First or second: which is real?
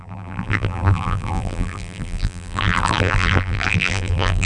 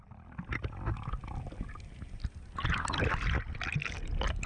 second